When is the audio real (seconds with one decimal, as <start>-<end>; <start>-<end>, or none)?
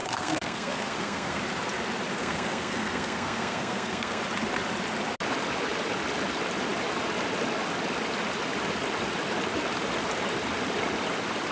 1.4-2.2; 4.2-11.5